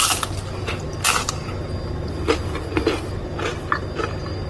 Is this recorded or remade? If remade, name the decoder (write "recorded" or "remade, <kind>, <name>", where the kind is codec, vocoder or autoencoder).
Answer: recorded